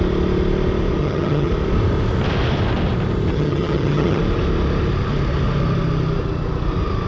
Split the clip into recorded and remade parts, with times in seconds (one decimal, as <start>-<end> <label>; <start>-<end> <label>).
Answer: 0.0-1.0 recorded; 1.0-1.5 remade; 1.5-3.3 recorded; 3.3-4.2 remade; 4.2-7.1 recorded